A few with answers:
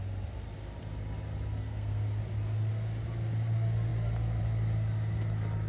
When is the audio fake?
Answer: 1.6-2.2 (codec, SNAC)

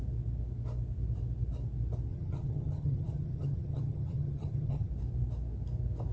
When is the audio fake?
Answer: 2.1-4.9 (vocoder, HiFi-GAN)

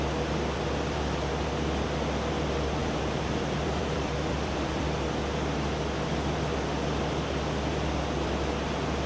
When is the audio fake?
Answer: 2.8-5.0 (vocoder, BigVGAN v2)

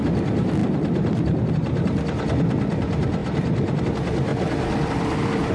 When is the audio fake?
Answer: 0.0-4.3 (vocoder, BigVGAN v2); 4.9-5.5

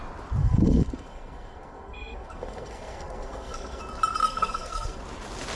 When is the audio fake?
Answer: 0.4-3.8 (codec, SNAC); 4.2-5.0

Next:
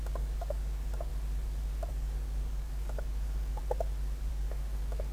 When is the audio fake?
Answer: 0.0-1.1 (codec, DAC); 1.9-3.6; 4.3-5.1

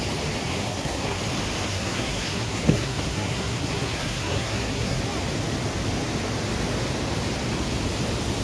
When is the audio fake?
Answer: 0.5-1.2 (codec, SNAC); 1.7-5.0